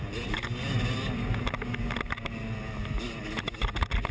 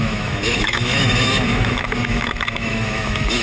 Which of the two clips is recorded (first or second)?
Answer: first